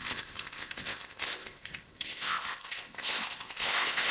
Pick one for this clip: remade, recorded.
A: remade